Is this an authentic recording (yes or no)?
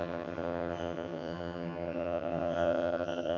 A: no